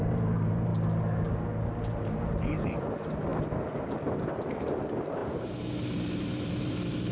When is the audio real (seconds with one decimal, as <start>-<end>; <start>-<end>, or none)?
0.7-2.0; 3.3-4.5